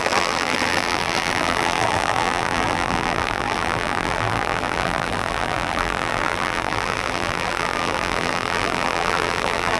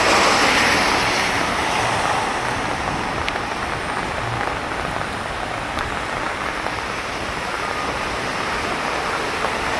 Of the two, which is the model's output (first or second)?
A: first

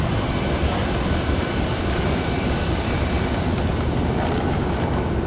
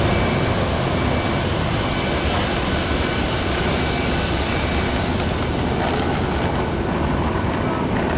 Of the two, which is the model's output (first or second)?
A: first